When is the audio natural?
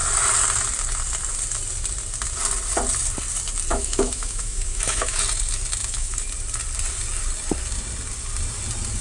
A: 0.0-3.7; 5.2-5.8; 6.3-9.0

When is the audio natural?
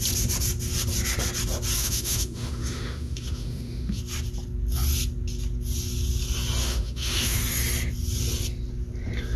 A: 0.0-1.8; 4.0-6.6; 7.4-9.4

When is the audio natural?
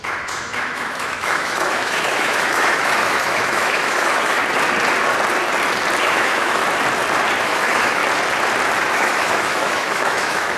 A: 4.4-6.0; 6.6-7.4; 8.0-8.9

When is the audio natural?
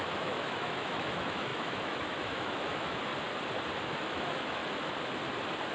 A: 3.1-4.0; 4.6-5.7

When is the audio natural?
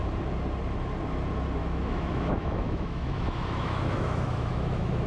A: 0.0-1.6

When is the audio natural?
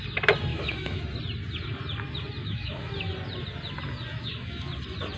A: 0.0-0.5; 1.0-2.4; 2.9-4.1; 4.7-5.2